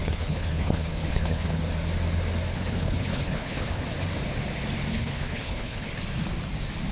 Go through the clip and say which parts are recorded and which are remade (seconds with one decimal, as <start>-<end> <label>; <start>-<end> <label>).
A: 0.0-1.6 remade; 1.6-2.5 recorded; 2.5-3.8 remade; 3.8-4.9 recorded; 4.9-5.9 remade; 5.9-6.9 recorded

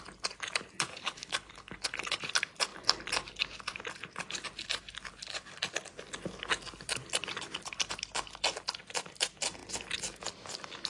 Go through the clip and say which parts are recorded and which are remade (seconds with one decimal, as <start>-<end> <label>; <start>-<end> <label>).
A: 0.0-0.9 recorded; 0.9-2.2 remade; 2.2-10.9 recorded

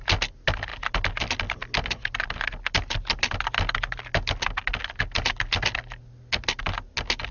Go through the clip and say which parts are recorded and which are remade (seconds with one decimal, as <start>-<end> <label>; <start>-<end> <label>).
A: 0.0-7.3 recorded

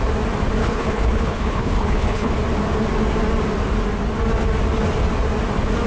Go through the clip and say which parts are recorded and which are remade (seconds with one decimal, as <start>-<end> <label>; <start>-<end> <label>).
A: 0.0-0.6 recorded; 0.6-2.3 remade; 2.3-5.9 recorded

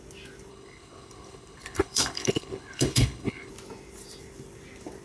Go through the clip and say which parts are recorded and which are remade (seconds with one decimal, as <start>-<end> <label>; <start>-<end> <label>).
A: 0.0-0.5 recorded; 0.5-3.5 remade; 3.5-5.0 recorded